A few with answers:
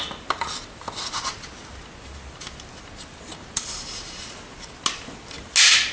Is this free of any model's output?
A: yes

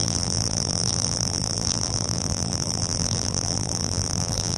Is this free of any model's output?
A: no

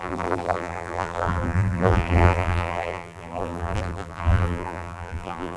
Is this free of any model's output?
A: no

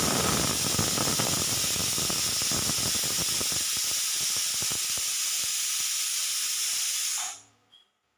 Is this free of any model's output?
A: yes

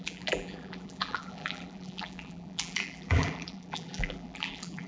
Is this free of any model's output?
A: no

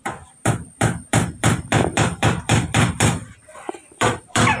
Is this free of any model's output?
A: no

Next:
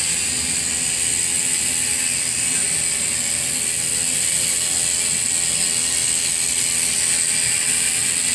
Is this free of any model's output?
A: yes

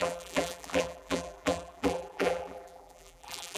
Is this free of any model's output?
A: no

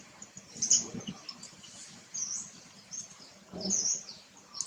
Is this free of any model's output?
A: yes